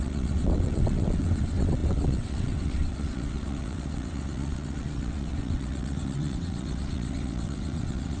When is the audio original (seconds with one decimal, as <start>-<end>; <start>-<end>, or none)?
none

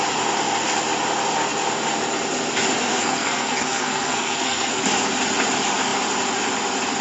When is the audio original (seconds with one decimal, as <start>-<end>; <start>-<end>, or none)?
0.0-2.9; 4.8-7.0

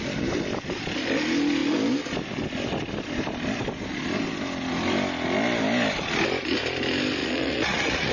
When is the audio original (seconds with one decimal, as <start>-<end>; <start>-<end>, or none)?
0.0-7.2

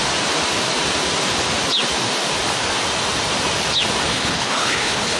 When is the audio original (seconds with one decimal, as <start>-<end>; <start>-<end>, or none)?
0.0-4.1

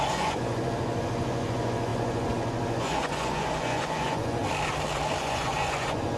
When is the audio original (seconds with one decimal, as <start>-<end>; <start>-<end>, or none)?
4.4-5.2

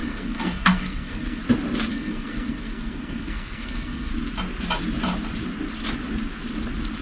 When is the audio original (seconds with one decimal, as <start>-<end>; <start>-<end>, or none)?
1.4-1.9; 4.1-7.0

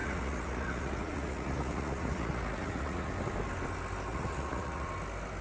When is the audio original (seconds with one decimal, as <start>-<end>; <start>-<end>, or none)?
3.1-4.1; 4.9-5.4

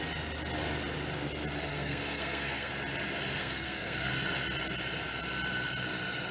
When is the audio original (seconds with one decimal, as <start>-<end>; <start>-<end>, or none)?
0.0-1.7; 2.7-3.4; 4.1-6.3